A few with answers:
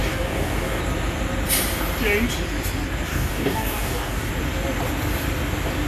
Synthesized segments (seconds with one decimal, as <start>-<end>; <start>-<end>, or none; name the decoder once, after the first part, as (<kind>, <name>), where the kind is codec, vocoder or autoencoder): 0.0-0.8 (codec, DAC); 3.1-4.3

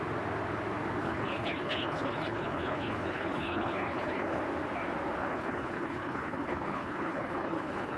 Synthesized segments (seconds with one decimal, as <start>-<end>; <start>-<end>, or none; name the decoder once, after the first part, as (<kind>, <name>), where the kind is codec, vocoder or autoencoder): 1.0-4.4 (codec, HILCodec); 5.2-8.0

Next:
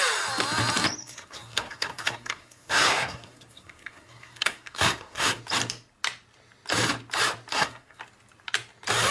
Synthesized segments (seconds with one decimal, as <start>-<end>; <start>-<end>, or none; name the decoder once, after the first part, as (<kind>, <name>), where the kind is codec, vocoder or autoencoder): 1.0-5.4 (codec, SNAC); 7.5-8.0